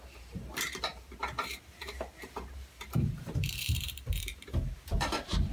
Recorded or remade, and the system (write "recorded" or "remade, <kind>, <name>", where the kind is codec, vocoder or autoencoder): remade, vocoder, BigVGAN v2